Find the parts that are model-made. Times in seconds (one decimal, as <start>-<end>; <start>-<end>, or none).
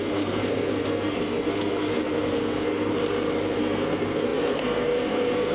0.0-2.9; 3.6-5.5